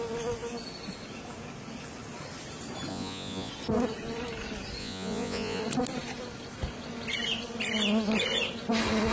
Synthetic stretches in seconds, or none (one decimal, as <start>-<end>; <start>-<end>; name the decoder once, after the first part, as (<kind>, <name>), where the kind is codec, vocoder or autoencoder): 2.9-3.5 (vocoder, Vocos); 4.8-5.6